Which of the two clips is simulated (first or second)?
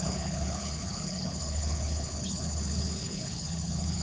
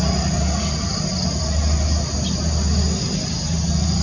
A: first